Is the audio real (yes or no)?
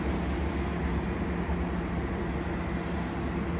yes